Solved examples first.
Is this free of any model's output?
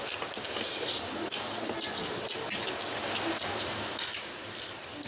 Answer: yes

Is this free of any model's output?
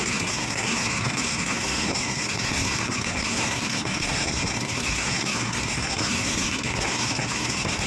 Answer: no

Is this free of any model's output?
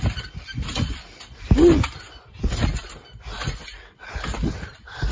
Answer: yes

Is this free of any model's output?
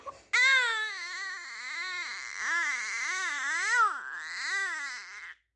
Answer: yes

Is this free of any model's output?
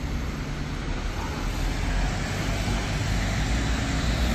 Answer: yes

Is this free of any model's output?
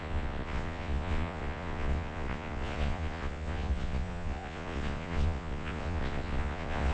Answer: no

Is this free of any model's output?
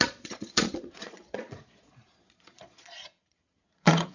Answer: no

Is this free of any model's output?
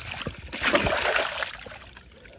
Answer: yes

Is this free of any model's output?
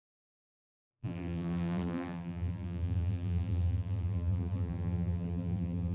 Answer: no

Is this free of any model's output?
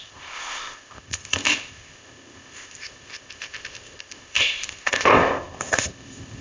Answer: no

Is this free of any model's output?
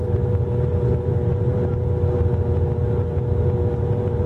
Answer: yes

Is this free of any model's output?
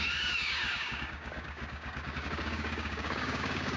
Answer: no